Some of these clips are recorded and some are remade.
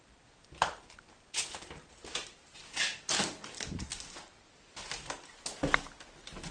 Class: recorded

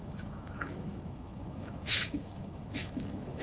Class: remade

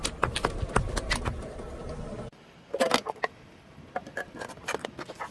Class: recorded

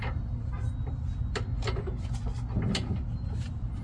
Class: recorded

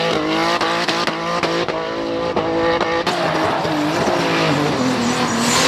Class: recorded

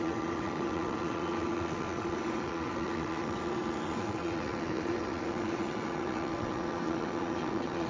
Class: remade